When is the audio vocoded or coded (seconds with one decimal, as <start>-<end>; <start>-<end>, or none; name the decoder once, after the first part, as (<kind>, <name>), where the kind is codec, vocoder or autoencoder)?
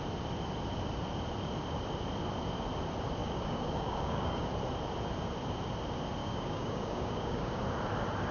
3.2-4.4 (codec, DAC); 6.2-7.6